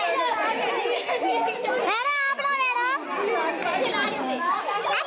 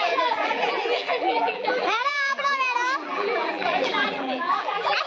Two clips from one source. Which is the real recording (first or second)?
first